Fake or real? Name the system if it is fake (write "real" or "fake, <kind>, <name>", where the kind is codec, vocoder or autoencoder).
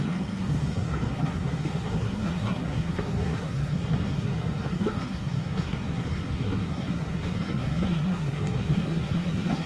fake, codec, SNAC